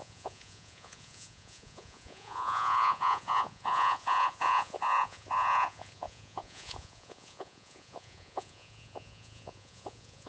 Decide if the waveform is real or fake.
fake